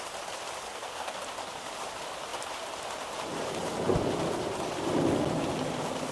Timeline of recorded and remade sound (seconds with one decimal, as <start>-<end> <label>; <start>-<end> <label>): 0.0-0.7 recorded; 0.7-1.2 remade; 1.2-6.1 recorded